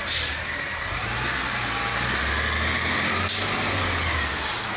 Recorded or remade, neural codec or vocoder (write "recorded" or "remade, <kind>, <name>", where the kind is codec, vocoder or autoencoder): recorded